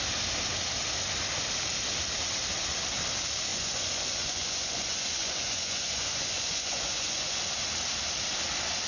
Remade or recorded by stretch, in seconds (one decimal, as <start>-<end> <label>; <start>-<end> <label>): 0.0-3.5 recorded; 3.5-7.4 remade; 7.4-8.9 recorded